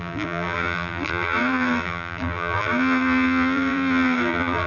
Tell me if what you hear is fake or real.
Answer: fake